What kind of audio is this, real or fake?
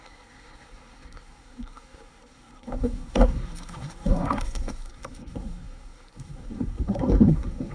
fake